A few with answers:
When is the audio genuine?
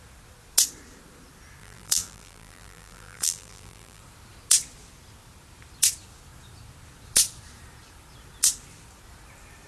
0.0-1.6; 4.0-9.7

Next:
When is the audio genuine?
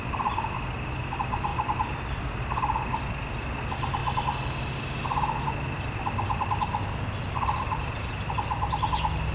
0.0-1.5; 2.2-9.3